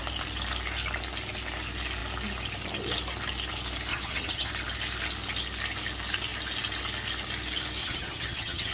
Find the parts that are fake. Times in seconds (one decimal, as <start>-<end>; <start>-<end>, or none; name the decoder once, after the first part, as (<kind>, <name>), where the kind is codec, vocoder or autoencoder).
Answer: 3.9-4.5 (vocoder, HiFi-GAN); 7.8-8.7